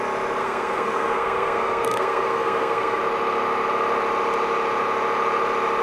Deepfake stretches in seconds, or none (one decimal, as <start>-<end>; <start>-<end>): 0.4-3.0